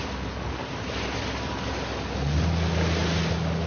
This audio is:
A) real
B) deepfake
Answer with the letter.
A